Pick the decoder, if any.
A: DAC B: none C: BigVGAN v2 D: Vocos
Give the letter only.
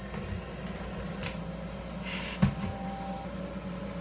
B